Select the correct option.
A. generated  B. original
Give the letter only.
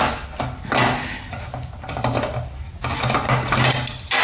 B